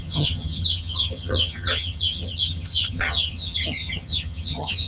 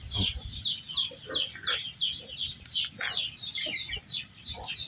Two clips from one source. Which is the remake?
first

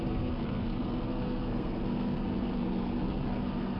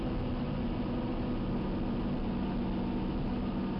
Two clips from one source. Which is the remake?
first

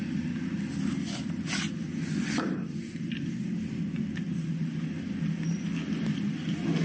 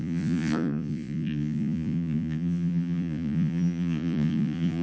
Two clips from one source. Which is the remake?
second